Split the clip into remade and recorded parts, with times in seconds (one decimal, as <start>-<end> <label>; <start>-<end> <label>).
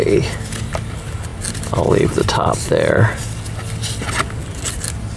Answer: 0.0-5.2 recorded